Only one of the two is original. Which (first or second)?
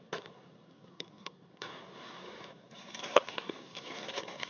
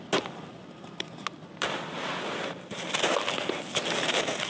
second